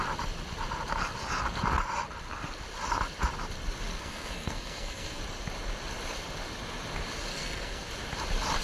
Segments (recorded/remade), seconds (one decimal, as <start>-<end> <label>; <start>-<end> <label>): 0.0-3.9 recorded; 3.9-5.2 remade; 5.2-7.3 recorded; 7.3-7.9 remade; 7.9-8.6 recorded